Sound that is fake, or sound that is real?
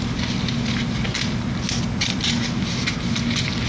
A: real